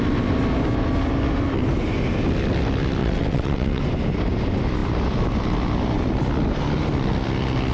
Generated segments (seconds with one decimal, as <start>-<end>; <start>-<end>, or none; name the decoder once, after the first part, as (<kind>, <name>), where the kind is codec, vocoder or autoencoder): 3.0-3.8 (vocoder, WaveNeXt)